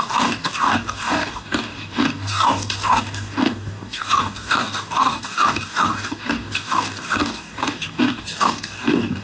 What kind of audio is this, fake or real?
fake